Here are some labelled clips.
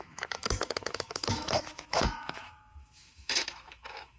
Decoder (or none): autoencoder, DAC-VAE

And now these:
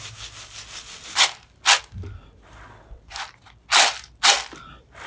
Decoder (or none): none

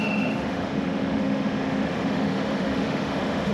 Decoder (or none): autoencoder, DAC-VAE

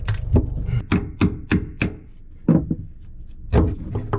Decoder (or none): none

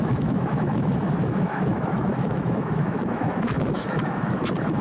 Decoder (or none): autoencoder, DAC-VAE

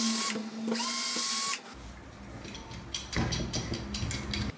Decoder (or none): none